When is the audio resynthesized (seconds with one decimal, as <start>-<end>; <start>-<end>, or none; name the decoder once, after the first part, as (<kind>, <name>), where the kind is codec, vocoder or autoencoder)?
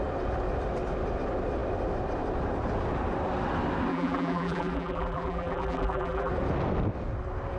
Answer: 3.9-6.3 (vocoder, BigVGAN v2)